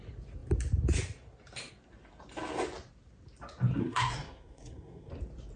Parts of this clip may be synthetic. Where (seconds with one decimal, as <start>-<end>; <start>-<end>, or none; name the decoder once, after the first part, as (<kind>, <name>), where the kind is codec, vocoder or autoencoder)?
3.8-5.1 (codec, SNAC)